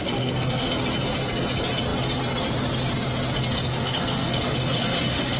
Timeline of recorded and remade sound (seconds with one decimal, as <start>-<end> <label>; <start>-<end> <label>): 0.0-0.7 remade; 0.7-3.7 recorded; 3.7-5.4 remade